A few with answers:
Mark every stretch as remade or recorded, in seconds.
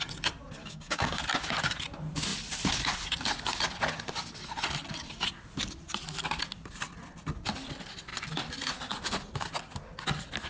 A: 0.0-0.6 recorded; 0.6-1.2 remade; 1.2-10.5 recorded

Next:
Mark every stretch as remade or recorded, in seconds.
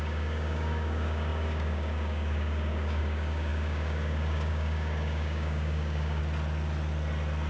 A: 0.0-6.2 remade; 6.2-7.5 recorded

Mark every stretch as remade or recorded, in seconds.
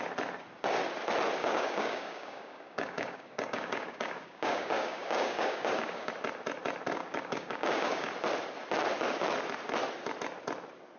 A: 0.0-1.4 recorded; 1.4-6.1 remade; 6.1-7.0 recorded; 7.0-8.1 remade; 8.1-11.0 recorded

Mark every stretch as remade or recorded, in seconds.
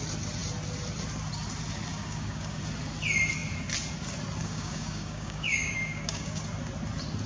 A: 0.0-1.9 recorded; 1.9-2.6 remade; 2.6-4.4 recorded; 4.4-6.4 remade; 6.4-7.3 recorded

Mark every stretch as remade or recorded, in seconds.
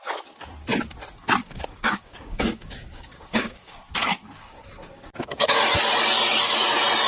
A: 0.0-1.4 recorded; 1.4-5.6 remade; 5.6-7.1 recorded